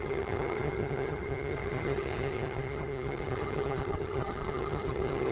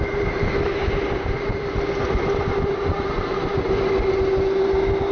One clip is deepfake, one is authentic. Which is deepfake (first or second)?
first